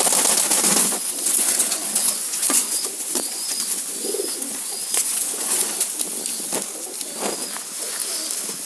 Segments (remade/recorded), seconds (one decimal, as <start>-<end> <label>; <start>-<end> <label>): 0.0-0.8 recorded; 0.8-5.7 remade; 5.7-8.7 recorded